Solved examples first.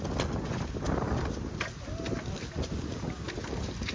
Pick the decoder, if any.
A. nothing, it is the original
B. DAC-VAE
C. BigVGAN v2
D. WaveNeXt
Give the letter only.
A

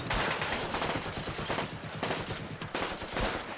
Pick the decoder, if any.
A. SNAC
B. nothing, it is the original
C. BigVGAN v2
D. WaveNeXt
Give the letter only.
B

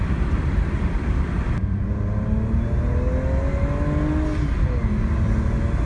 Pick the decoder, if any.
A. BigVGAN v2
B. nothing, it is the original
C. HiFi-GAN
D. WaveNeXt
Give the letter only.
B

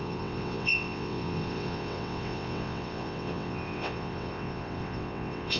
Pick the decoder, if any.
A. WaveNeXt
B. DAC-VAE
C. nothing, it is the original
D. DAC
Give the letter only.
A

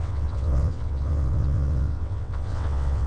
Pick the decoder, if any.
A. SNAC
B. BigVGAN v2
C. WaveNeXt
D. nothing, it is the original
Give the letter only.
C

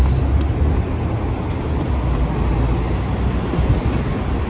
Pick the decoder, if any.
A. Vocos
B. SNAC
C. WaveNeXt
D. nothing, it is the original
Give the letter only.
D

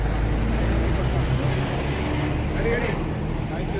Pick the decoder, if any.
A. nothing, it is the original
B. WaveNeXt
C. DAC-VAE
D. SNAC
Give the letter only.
A